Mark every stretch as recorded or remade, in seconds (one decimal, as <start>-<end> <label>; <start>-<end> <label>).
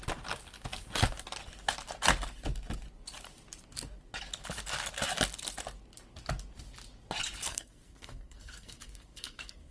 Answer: 0.0-7.5 recorded; 7.5-9.7 remade